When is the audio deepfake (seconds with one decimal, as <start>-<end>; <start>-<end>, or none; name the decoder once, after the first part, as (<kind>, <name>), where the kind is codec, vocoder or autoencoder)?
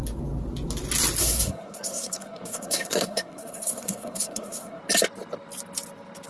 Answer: 1.2-4.8 (codec, SNAC)